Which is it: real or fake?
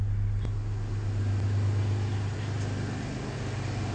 real